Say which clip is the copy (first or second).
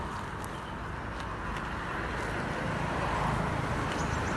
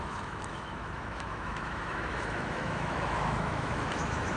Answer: second